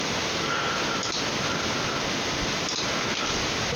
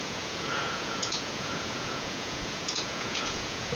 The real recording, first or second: first